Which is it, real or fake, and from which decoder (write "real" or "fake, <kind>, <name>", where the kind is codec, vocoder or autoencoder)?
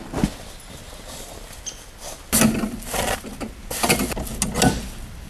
real